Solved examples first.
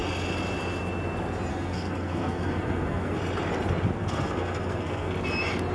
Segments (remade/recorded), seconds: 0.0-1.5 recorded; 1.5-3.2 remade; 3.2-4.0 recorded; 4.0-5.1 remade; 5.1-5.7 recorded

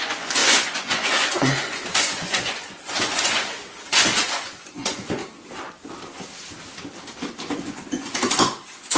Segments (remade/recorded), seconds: 0.0-5.2 remade; 5.2-7.5 recorded; 7.5-9.0 remade

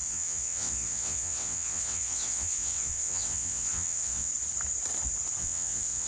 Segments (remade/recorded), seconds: 0.0-4.3 remade; 4.3-5.4 recorded; 5.4-6.1 remade

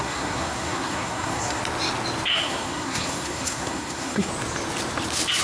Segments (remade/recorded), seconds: 0.0-1.6 remade; 1.6-2.3 recorded; 2.3-4.3 remade; 4.3-5.4 recorded

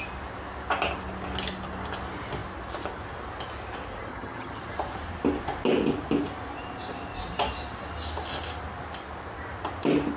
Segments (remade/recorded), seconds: 0.0-4.1 recorded; 4.1-4.6 remade; 4.6-10.2 recorded

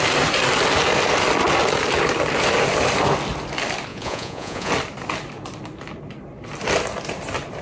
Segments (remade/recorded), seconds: 0.0-3.9 recorded; 3.9-4.7 remade; 4.7-7.6 recorded